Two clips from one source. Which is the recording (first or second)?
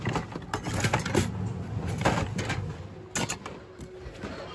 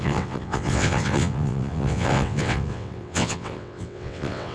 first